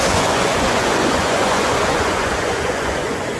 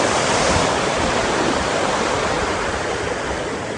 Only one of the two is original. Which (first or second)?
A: second